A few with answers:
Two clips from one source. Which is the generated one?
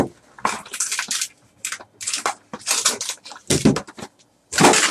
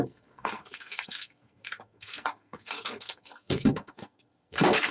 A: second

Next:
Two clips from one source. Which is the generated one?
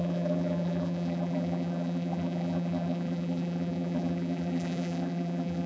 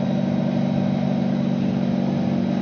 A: first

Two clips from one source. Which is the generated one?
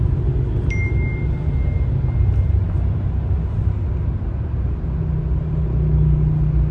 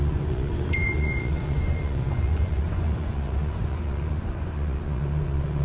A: second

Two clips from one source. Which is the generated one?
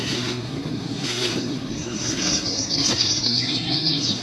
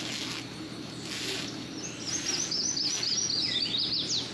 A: first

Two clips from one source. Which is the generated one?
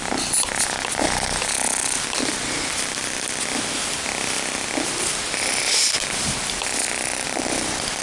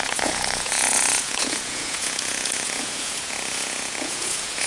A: second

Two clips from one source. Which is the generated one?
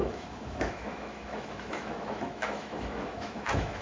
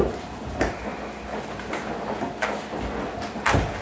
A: first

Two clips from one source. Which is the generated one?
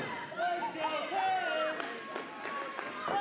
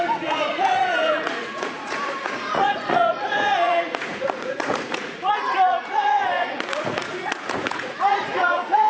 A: second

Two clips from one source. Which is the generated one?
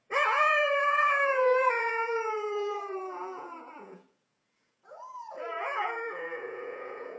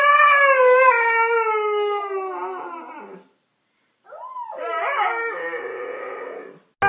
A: first